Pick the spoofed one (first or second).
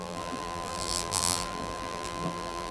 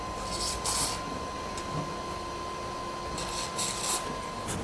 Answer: first